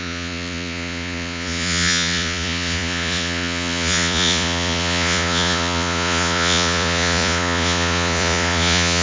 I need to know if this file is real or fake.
fake